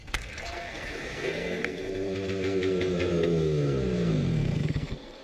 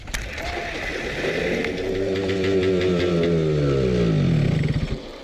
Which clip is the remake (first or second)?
first